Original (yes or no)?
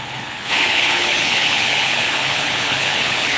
no